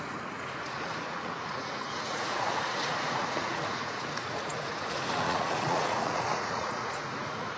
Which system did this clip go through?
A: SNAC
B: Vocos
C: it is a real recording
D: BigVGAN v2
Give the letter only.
B